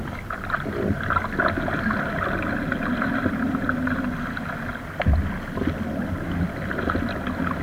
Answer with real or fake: real